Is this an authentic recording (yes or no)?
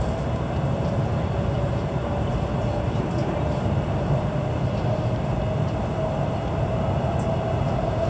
yes